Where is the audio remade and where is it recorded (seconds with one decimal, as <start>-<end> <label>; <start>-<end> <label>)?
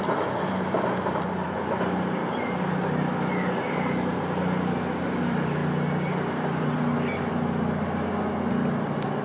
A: 0.0-2.2 remade; 2.2-4.9 recorded; 4.9-5.6 remade; 5.6-6.2 recorded; 6.2-7.3 remade; 7.3-8.5 recorded; 8.5-9.2 remade